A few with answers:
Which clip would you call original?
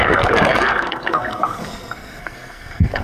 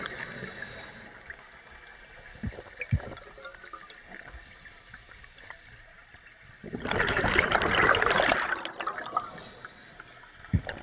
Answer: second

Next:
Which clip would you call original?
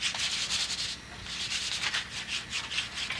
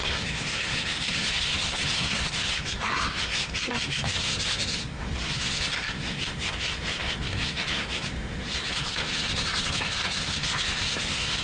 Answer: first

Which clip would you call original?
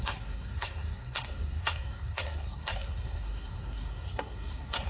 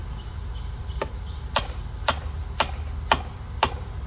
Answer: second